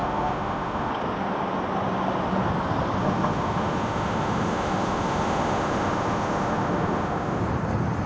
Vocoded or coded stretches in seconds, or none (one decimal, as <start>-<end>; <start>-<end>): 0.0-0.9; 3.0-7.4